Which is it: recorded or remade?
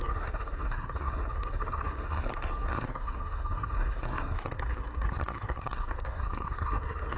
remade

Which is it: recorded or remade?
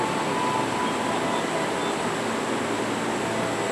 recorded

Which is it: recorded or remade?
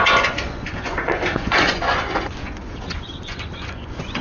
remade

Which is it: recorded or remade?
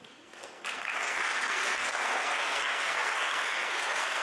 remade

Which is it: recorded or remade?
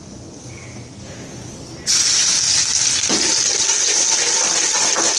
recorded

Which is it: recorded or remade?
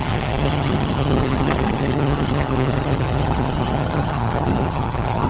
remade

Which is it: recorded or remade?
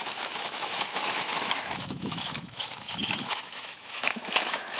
remade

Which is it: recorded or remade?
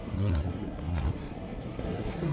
remade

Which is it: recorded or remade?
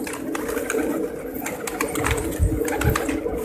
recorded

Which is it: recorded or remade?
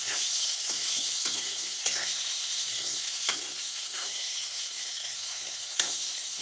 remade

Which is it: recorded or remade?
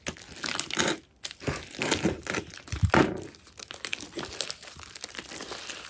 recorded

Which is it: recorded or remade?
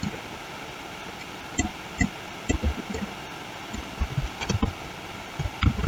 recorded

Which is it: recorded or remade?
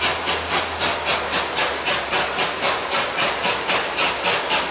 recorded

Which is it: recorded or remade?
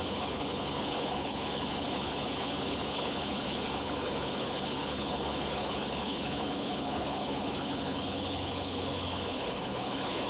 remade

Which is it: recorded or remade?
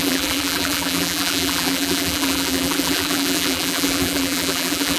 remade